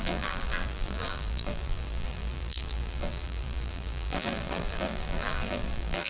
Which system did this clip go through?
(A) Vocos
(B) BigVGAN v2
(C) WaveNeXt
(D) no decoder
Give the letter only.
B